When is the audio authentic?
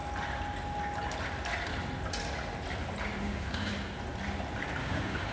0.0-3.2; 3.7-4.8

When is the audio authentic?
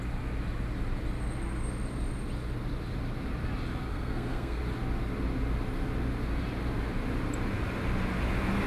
0.0-3.9; 4.6-8.7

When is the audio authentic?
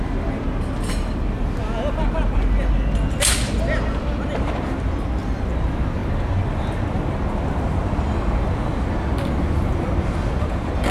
0.0-10.9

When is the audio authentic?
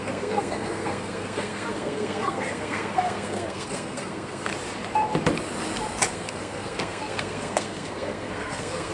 4.5-6.1